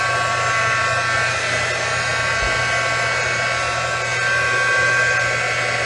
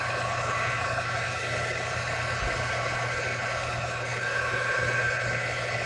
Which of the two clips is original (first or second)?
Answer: first